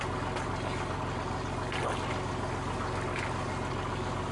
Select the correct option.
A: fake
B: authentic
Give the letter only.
B